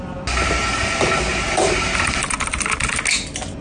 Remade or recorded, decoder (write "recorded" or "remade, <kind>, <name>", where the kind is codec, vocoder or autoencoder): recorded